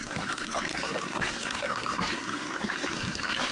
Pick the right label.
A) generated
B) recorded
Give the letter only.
A